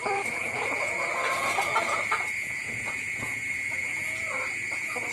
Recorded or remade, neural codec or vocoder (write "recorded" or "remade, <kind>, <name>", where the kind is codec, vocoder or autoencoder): remade, vocoder, Vocos